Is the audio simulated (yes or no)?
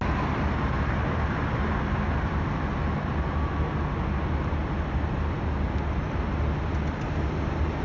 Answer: no